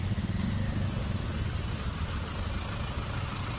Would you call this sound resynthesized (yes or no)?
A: no